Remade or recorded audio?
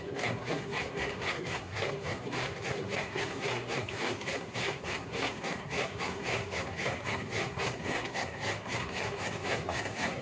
remade